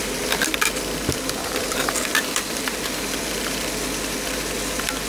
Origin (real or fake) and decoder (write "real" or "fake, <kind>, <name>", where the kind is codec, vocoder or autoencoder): fake, vocoder, BigVGAN v2